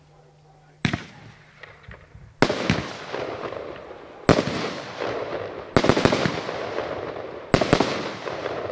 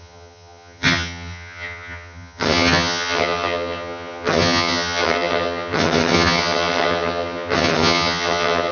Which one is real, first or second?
first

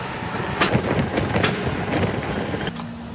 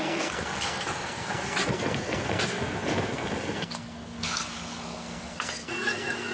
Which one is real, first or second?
first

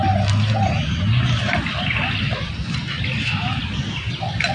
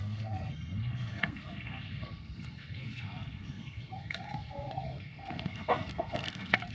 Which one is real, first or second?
first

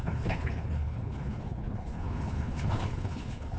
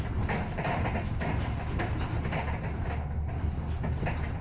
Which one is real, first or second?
second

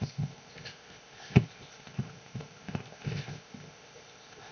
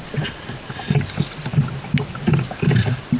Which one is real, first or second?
second